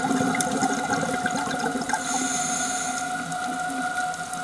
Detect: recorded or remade recorded